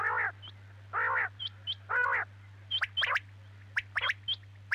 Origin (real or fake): real